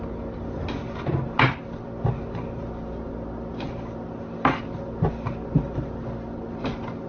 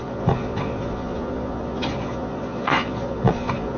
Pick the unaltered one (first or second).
first